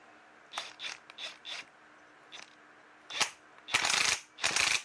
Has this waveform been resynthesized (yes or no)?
no